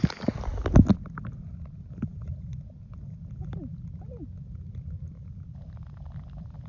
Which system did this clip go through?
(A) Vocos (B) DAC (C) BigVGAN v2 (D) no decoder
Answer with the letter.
D